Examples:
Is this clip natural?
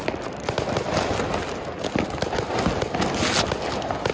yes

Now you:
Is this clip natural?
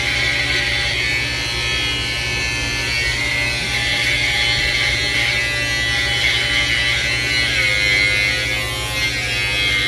yes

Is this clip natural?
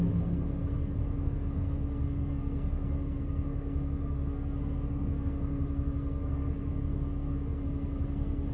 no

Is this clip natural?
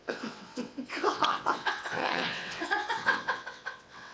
no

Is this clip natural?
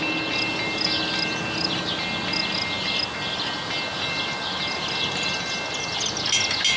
yes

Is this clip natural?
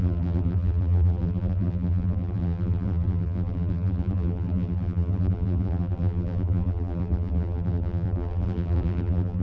no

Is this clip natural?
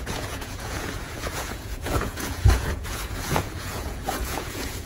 no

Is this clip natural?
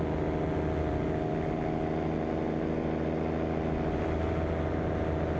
yes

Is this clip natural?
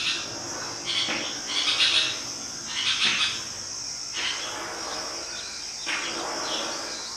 yes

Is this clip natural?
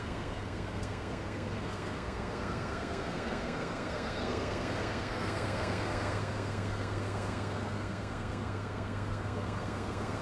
no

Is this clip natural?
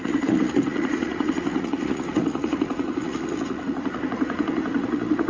no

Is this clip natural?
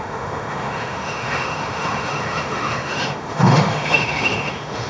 no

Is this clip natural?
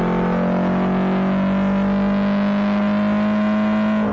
yes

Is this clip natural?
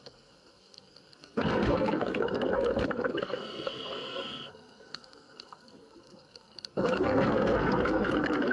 no